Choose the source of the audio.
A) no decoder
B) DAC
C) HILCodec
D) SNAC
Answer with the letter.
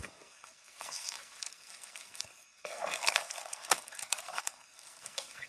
D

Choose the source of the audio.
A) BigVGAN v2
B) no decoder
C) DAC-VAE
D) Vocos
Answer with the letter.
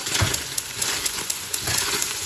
D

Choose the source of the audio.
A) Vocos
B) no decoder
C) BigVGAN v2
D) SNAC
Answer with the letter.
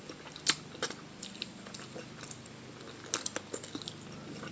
B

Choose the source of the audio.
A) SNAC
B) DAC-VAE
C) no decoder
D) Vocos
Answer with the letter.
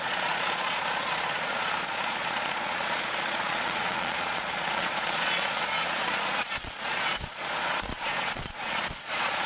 D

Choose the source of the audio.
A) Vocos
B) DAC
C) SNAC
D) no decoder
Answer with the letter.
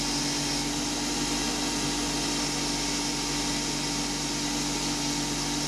D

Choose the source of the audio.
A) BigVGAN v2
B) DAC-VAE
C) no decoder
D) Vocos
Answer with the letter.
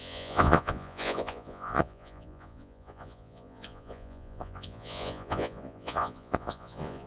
D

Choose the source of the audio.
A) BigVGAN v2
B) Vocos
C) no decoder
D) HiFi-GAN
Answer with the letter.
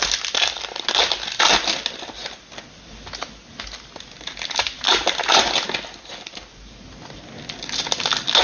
C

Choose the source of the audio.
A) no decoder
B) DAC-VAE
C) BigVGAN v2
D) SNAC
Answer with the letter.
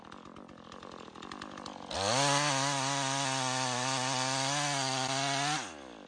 A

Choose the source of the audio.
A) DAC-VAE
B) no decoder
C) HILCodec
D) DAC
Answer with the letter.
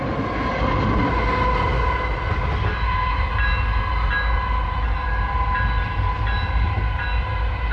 B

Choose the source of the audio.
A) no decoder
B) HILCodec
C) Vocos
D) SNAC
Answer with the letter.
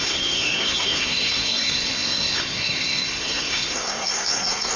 D